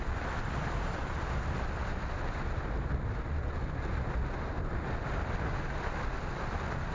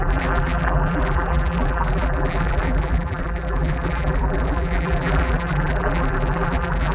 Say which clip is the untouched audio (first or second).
first